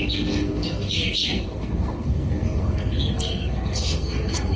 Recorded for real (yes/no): no